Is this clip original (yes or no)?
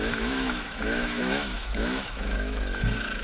no